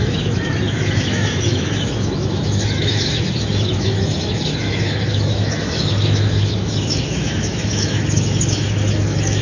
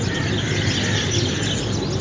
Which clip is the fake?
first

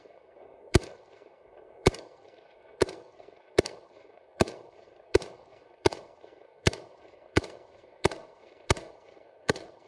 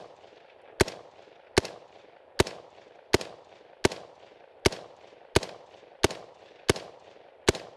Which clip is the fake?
first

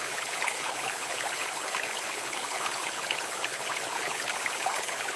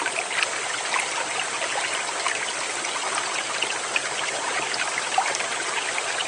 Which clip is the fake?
first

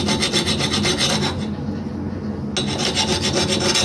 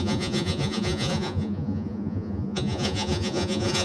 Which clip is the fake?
second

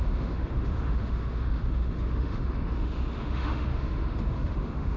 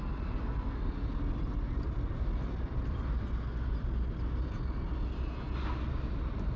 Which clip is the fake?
first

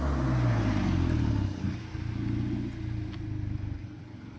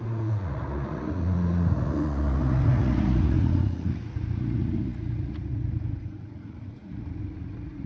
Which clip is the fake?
second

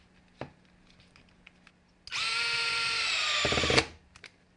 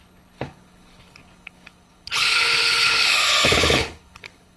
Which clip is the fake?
second